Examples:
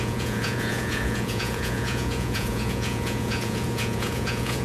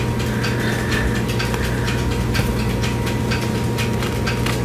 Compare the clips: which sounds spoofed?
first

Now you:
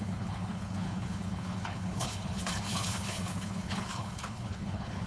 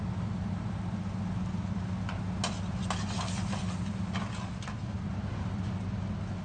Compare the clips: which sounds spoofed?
first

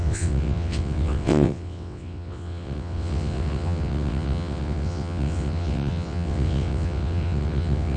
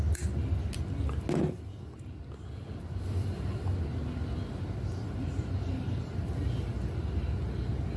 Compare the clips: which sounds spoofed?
first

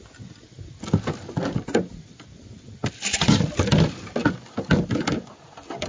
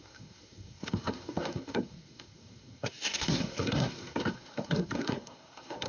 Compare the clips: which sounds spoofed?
second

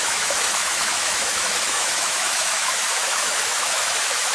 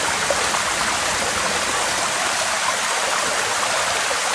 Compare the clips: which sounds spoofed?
first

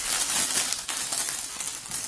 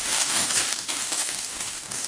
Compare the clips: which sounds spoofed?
second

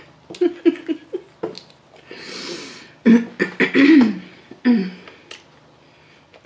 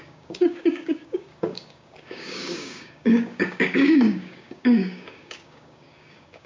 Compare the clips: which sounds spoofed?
second